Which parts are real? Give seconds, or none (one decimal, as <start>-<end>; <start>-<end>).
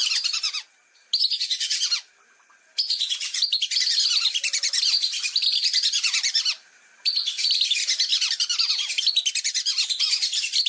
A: none